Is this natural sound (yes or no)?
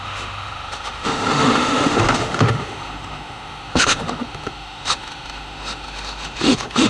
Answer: no